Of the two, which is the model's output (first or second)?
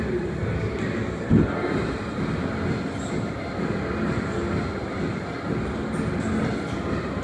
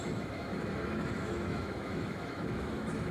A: second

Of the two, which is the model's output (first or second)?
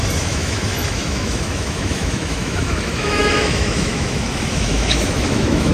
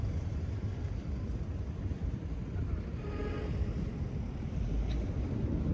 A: first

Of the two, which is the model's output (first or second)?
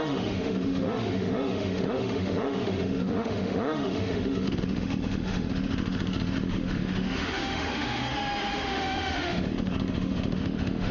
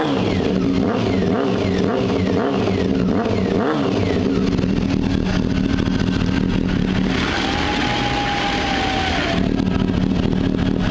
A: first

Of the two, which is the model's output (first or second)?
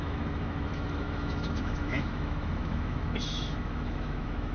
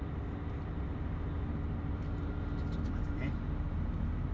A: first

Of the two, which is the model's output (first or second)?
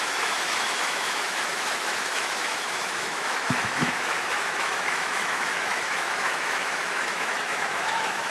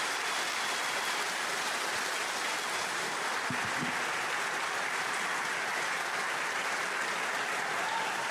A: first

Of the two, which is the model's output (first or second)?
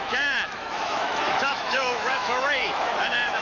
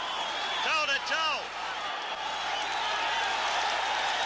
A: first